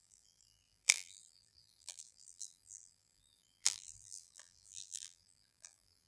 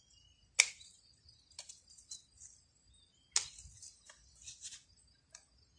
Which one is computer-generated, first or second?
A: first